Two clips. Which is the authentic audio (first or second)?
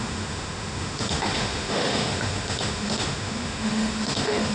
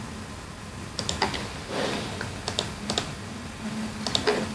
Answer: second